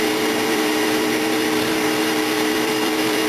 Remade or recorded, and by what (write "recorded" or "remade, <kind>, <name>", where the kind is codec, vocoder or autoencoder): remade, vocoder, BigVGAN v2